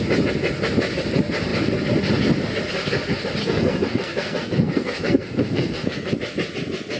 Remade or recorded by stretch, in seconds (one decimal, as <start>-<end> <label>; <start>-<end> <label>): 0.0-3.4 recorded; 3.4-6.1 remade; 6.1-7.0 recorded